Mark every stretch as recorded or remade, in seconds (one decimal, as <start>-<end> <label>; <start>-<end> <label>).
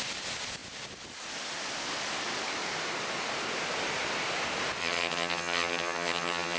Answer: 0.0-4.8 recorded; 4.8-6.6 remade